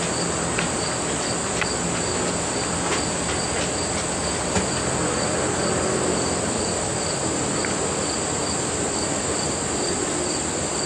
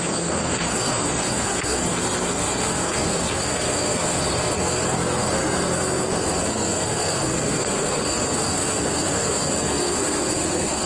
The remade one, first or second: second